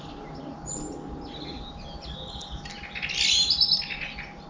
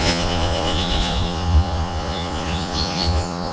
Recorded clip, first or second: first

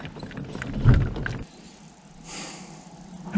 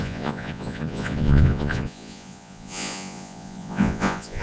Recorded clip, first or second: first